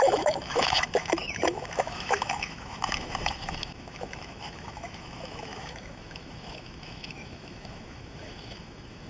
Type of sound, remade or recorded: remade